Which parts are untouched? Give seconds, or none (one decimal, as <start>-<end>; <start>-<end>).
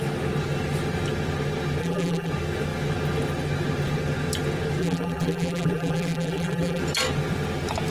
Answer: 0.0-1.8; 2.3-4.8; 6.8-7.9